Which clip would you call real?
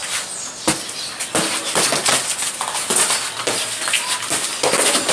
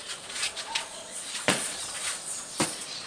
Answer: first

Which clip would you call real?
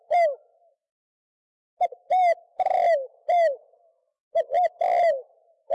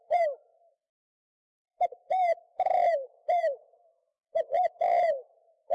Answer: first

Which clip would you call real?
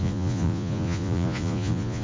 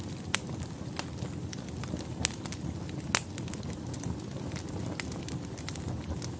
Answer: second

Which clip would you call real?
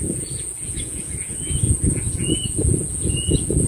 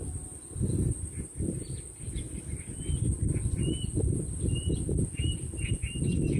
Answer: second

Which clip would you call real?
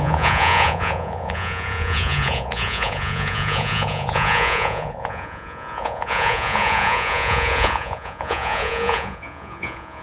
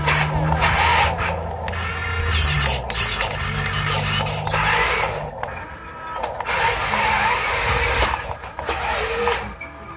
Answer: second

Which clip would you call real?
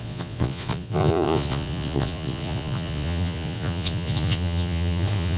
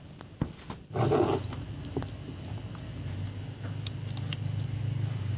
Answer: second